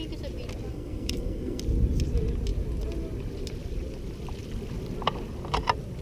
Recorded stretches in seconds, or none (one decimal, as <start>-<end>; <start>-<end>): 0.0-0.7; 1.6-6.0